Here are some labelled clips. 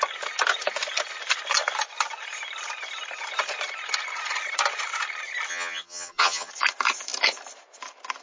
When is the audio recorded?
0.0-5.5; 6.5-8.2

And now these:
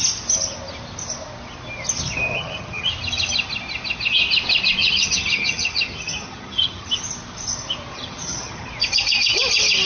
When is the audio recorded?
0.0-2.3; 2.9-4.8; 6.9-7.9; 8.7-9.9

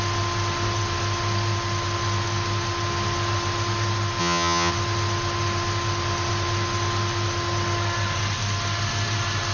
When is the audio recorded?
0.0-4.2; 4.7-9.5